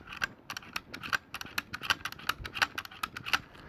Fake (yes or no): no